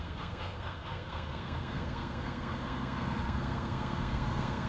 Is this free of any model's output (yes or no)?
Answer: no